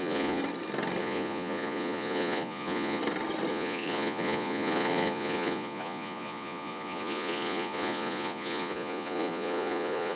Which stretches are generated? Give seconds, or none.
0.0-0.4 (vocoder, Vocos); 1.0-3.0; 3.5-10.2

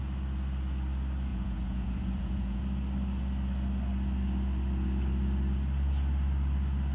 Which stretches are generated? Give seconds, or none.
1.3-2.6 (vocoder, Vocos)

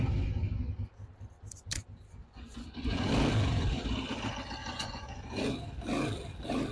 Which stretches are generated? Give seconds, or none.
2.2-3.1 (vocoder, Vocos); 4.6-5.4